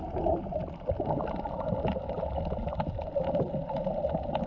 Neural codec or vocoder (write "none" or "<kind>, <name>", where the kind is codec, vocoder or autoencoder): none